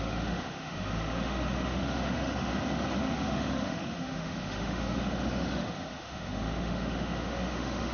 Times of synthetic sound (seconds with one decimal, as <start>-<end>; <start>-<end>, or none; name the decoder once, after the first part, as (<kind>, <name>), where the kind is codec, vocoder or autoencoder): 0.0-2.5 (autoencoder, DAC-VAE); 3.0-7.9